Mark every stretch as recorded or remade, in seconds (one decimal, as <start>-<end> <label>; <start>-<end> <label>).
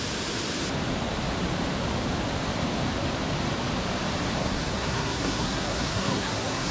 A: 0.0-4.4 recorded; 4.4-6.7 remade